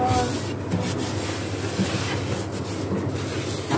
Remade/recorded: recorded